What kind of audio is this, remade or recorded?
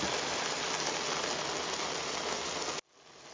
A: recorded